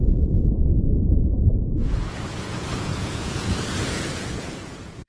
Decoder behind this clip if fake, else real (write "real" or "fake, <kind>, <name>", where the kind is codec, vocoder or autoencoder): fake, vocoder, Vocos